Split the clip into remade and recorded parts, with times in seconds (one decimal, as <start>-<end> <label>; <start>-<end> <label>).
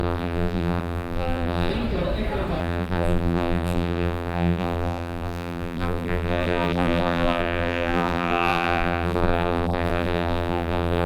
0.0-1.7 remade; 1.7-2.6 recorded; 2.6-11.1 remade